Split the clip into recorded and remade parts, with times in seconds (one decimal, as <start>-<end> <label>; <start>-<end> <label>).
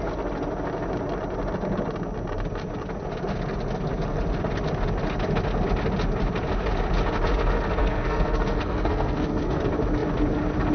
0.0-7.8 recorded; 7.8-9.6 remade; 9.6-10.7 recorded